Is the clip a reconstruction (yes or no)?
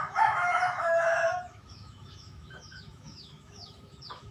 yes